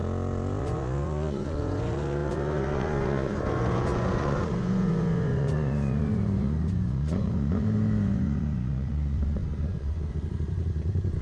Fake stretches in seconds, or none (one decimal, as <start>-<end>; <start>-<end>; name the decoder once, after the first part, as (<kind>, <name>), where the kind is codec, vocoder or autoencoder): 0.6-11.2 (vocoder, Vocos)